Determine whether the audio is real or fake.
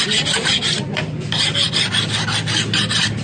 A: real